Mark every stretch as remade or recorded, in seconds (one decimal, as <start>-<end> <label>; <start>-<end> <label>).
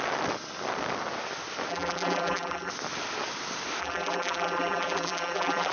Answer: 0.0-1.7 recorded; 1.7-2.7 remade; 2.7-3.8 recorded; 3.8-5.7 remade